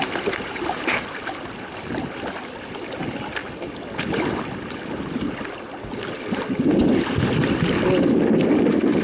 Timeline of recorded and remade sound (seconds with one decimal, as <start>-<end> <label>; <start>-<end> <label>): 0.0-9.0 recorded